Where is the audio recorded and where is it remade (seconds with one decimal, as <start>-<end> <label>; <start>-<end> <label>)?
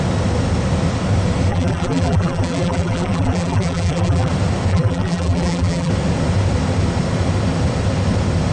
0.0-1.5 recorded; 1.5-4.3 remade; 4.3-4.7 recorded; 4.7-5.9 remade; 5.9-8.5 recorded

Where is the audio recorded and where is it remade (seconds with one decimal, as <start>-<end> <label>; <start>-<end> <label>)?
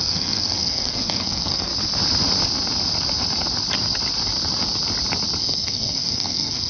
0.0-1.7 remade; 1.7-5.4 recorded; 5.4-6.7 remade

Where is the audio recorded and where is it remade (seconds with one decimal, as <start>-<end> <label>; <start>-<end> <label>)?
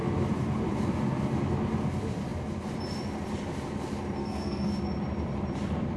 0.0-4.2 recorded; 4.2-4.7 remade; 4.7-6.0 recorded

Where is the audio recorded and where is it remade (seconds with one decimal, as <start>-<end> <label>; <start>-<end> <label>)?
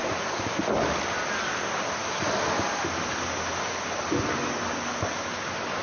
0.0-5.8 recorded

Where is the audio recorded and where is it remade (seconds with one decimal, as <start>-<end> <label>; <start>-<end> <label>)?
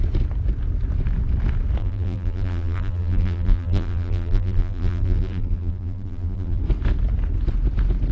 0.0-1.8 recorded; 1.8-6.6 remade; 6.6-8.1 recorded